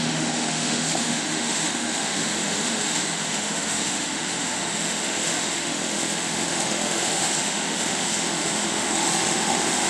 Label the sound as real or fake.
fake